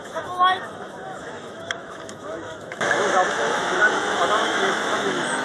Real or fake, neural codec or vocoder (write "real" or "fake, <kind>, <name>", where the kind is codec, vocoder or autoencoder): fake, autoencoder, DAC-VAE